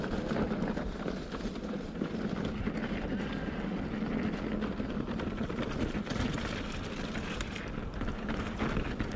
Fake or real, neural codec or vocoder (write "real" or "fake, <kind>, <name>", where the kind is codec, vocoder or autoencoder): real